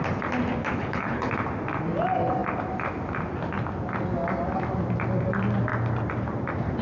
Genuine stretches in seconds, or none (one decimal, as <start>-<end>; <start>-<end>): 0.0-0.6; 1.3-6.8